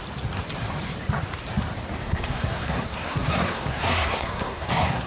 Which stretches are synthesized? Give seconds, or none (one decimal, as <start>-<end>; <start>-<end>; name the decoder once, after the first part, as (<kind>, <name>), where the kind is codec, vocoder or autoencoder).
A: 2.0-5.1 (codec, SNAC)